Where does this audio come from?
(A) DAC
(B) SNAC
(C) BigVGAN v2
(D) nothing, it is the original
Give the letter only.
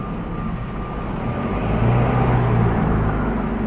D